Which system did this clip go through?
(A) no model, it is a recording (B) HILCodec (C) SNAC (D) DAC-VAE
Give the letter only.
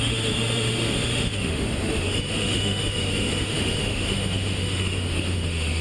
D